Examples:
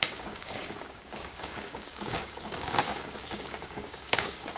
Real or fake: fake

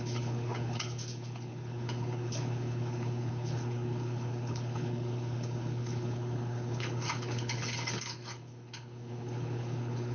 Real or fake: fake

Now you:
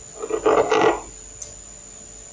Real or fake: real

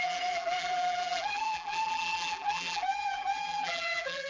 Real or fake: fake